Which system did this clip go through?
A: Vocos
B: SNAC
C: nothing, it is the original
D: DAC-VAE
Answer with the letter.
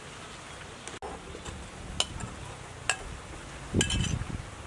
C